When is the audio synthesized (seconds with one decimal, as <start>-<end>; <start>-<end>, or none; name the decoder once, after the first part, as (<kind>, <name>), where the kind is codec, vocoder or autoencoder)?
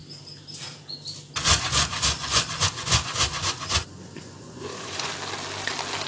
1.4-5.1 (vocoder, Vocos)